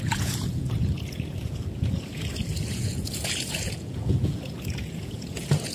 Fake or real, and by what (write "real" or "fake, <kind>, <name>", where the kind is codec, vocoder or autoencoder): fake, vocoder, Vocos